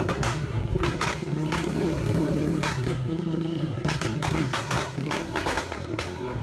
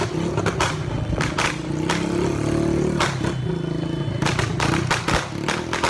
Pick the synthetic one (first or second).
first